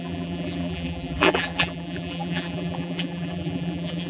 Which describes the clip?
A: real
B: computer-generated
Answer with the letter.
B